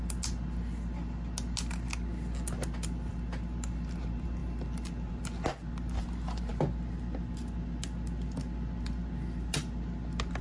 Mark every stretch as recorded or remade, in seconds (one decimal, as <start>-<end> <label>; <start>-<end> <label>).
0.0-10.4 recorded